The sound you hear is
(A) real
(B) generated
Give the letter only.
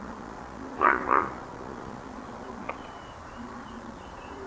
B